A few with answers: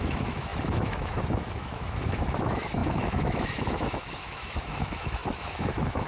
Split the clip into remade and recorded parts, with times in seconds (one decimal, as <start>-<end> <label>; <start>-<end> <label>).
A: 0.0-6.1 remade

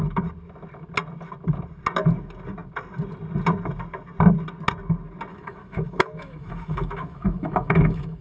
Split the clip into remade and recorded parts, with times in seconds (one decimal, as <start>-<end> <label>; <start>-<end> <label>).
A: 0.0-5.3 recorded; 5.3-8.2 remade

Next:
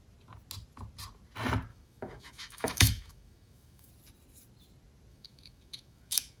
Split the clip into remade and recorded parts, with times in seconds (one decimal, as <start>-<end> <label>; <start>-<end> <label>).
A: 0.0-1.7 recorded; 1.7-3.9 remade; 3.9-5.1 recorded; 5.1-6.4 remade

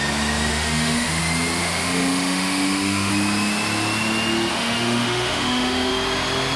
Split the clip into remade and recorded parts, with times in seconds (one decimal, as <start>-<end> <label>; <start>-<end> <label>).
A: 0.0-0.5 recorded; 0.5-1.2 remade; 1.2-1.6 recorded; 1.6-3.1 remade; 3.1-4.5 recorded; 4.5-5.9 remade; 5.9-6.6 recorded